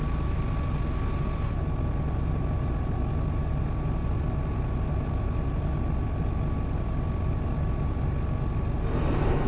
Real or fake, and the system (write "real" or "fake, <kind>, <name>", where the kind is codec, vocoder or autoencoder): real